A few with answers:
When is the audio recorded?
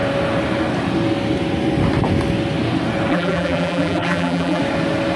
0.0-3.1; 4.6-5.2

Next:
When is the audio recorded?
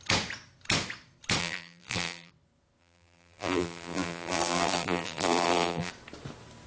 0.0-1.4; 2.3-2.8; 5.9-6.7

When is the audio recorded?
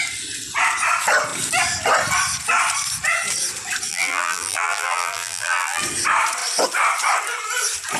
0.0-3.9; 5.8-8.0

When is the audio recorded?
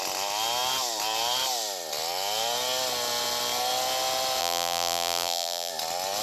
0.0-4.4; 5.7-6.2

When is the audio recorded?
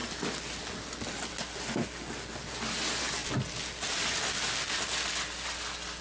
0.0-6.0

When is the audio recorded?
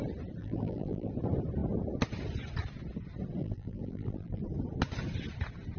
0.0-0.4; 1.1-3.4; 4.4-5.8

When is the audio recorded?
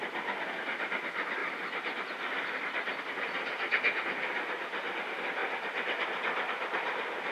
0.0-1.4; 3.0-5.4; 6.2-7.3